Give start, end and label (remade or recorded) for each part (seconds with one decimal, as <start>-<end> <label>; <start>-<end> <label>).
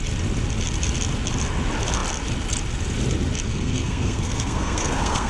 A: 0.0-3.5 recorded; 3.5-5.3 remade